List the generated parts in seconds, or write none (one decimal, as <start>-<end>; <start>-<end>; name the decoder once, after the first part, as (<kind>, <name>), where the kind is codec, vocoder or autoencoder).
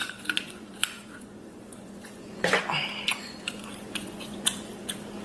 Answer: 0.0-2.6 (vocoder, Vocos); 3.1-4.7